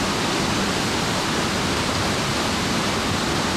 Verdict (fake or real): real